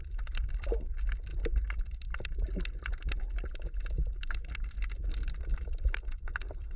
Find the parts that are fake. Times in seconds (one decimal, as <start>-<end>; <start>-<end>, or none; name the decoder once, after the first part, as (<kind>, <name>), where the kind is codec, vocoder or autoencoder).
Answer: 0.0-1.3 (vocoder, BigVGAN v2); 5.4-6.8